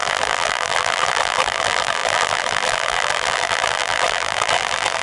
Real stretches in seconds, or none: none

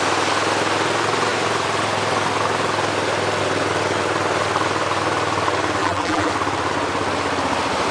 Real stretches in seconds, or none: 0.0-5.8; 6.3-7.9